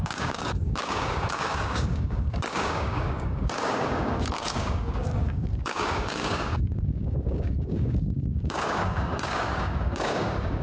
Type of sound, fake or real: fake